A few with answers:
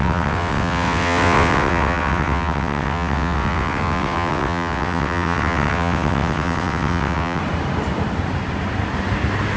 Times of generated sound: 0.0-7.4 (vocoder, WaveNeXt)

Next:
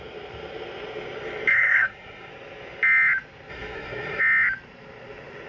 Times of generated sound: 1.5-2.3 (codec, SNAC); 3.5-4.2

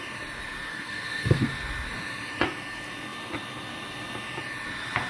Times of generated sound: 0.7-1.5 (codec, SNAC)

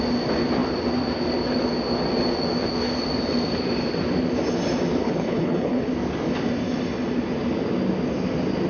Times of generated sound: 5.0-5.9 (codec, HILCodec)